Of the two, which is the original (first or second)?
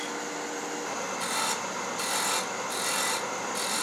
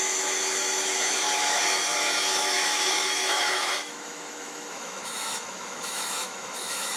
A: first